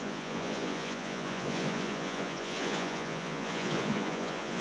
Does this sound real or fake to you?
fake